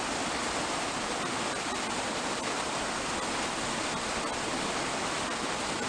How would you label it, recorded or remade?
recorded